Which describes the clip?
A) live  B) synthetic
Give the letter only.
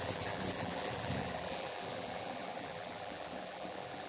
B